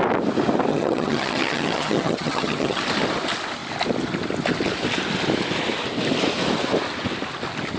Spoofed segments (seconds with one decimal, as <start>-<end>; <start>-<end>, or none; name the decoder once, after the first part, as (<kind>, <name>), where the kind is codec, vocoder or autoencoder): 0.7-2.8 (vocoder, HiFi-GAN)